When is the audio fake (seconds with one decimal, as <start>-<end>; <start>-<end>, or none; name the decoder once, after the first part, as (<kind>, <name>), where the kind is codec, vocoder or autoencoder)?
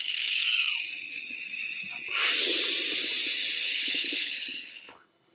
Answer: 0.0-0.4 (codec, HILCodec); 3.6-5.3